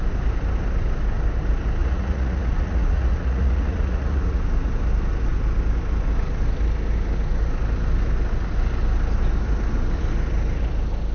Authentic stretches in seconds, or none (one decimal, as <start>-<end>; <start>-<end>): 0.0-1.8; 4.4-11.1

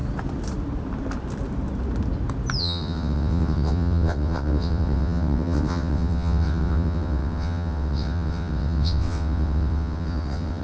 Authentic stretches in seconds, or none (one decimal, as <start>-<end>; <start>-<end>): 0.0-2.6